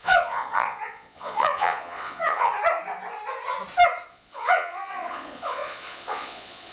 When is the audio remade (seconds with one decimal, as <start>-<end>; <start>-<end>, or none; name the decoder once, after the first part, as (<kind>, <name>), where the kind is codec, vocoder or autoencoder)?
0.0-2.5 (vocoder, Vocos); 4.1-6.7